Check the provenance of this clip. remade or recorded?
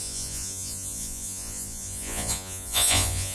remade